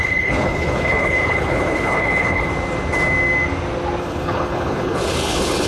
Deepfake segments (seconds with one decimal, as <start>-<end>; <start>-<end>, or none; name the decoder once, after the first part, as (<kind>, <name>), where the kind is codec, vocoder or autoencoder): 0.0-2.5 (codec, HILCodec); 4.0-5.7